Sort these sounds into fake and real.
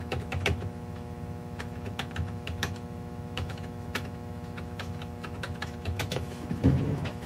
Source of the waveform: fake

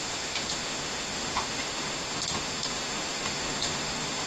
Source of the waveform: fake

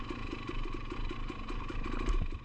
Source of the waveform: real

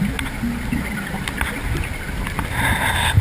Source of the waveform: real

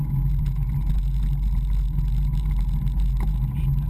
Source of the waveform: real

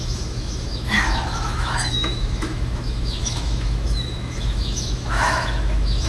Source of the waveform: fake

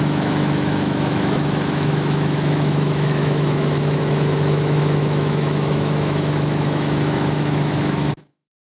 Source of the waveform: fake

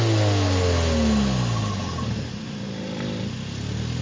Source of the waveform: real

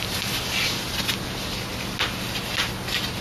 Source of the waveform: real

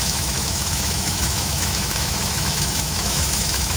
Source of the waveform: fake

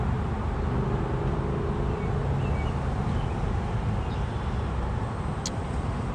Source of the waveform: real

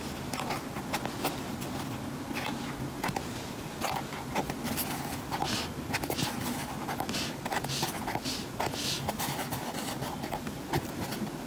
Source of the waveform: real